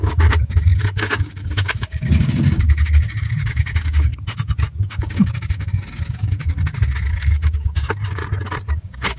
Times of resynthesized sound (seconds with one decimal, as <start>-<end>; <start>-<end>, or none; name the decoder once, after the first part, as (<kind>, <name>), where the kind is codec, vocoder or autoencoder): 0.0-4.1 (codec, DAC); 4.8-8.2; 8.7-9.2